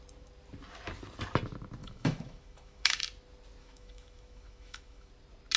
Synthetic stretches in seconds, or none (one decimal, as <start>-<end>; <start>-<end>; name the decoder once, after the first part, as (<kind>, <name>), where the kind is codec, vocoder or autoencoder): 1.8-3.0 (autoencoder, DAC-VAE); 3.6-5.1